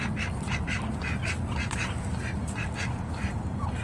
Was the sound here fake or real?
real